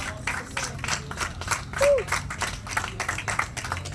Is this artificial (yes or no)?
no